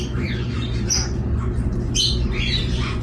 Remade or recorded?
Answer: remade